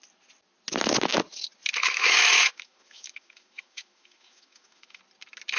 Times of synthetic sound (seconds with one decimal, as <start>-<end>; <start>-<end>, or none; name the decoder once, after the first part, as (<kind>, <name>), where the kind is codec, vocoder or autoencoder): 1.8-5.0 (autoencoder, DAC-VAE)